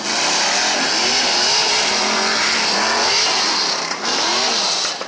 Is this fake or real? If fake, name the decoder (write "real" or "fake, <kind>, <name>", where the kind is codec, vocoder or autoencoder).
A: real